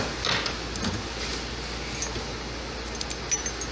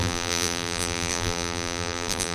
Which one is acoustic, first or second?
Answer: first